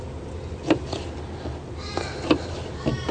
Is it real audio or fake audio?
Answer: real